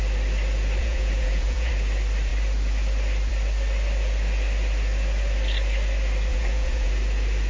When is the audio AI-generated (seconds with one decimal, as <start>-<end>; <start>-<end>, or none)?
0.8-1.7; 6.3-6.9